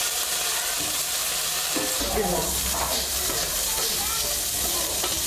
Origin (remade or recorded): recorded